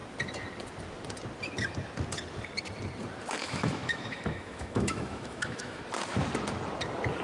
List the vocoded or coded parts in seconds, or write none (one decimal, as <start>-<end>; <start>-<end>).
3.4-5.8